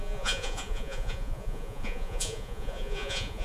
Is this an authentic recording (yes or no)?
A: no